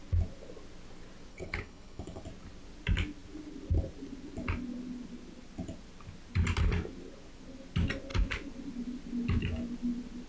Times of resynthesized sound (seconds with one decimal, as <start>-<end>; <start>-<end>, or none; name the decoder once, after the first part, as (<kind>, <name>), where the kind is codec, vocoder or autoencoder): 1.3-2.2 (codec, HILCodec)